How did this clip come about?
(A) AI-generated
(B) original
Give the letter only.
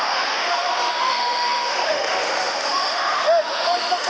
A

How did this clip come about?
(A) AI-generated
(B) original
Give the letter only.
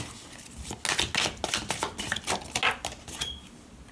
B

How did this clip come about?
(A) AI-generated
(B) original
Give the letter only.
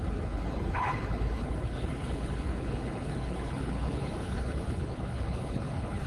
A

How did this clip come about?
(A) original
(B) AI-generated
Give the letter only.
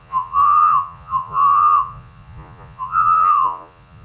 B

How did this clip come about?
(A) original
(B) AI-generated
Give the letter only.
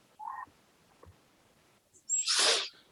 A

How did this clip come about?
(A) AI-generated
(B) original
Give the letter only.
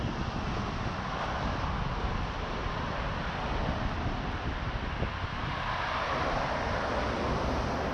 B